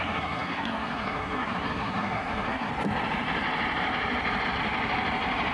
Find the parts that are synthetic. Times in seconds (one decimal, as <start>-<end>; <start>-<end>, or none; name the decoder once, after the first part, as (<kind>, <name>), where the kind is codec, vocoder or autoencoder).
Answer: 0.0-2.7 (codec, SNAC)